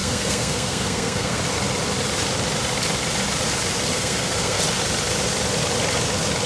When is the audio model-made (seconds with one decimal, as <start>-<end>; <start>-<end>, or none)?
0.0-1.4; 3.9-4.6